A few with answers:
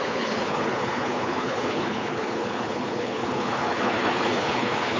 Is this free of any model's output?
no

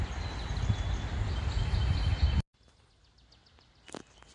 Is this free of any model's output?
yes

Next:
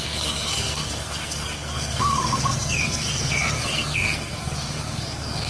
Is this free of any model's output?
no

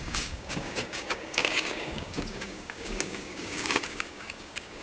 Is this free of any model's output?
no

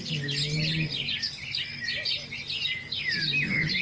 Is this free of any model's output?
yes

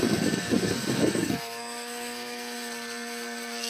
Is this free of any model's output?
no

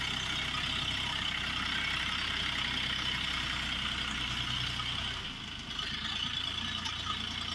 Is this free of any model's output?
yes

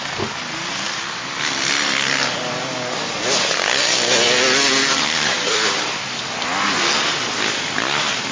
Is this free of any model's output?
yes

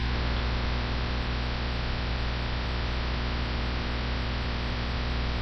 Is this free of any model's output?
yes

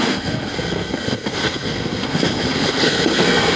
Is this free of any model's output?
no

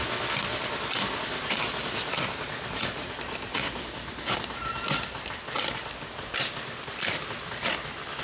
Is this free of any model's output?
yes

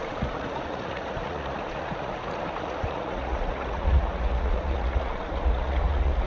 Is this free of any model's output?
no